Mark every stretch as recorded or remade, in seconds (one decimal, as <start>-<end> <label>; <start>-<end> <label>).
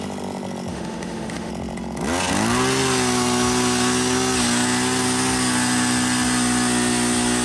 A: 0.0-0.7 recorded; 0.7-1.5 remade; 1.5-7.4 recorded